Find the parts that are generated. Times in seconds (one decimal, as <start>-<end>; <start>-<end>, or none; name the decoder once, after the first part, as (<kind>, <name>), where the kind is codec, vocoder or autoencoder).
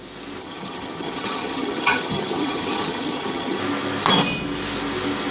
0.4-3.6 (vocoder, HiFi-GAN)